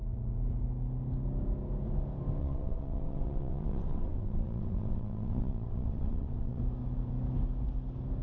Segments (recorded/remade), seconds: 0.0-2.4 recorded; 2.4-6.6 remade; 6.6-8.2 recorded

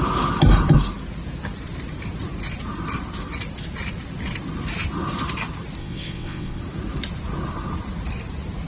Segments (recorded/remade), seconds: 0.0-5.8 recorded; 5.8-6.6 remade; 6.6-8.7 recorded